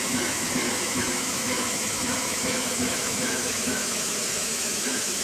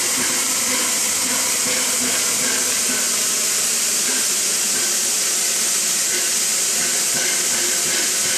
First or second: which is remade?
first